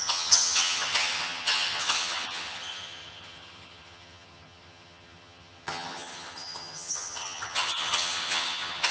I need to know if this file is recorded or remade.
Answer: remade